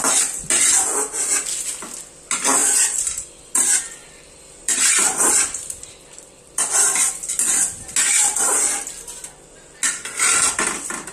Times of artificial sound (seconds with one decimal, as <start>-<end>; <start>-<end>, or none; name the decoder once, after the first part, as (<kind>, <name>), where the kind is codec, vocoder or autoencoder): 2.6-3.5 (vocoder, BigVGAN v2); 4.0-7.1